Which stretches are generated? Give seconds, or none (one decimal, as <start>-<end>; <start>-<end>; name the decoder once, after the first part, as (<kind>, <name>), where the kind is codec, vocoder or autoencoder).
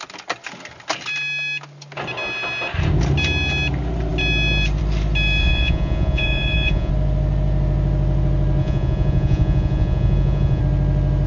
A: 5.4-6.9 (vocoder, Vocos); 8.6-10.6